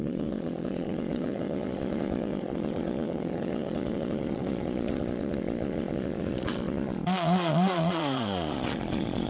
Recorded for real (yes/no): no